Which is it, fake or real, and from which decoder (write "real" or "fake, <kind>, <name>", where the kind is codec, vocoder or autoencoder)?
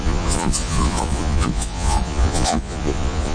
fake, vocoder, Vocos